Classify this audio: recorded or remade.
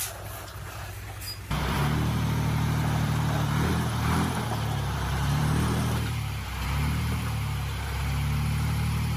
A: remade